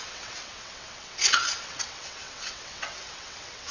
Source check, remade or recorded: remade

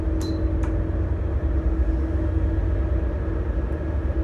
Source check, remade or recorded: recorded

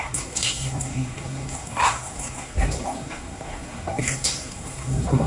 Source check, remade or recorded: remade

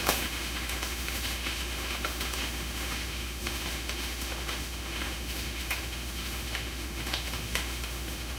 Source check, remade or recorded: remade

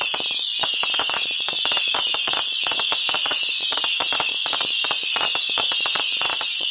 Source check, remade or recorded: remade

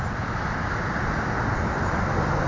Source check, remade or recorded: recorded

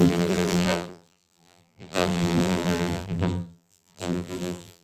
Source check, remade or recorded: remade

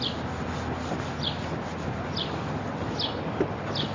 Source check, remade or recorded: recorded